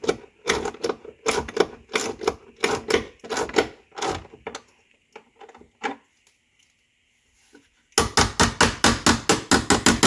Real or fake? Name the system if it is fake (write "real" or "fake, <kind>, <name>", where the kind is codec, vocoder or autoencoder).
real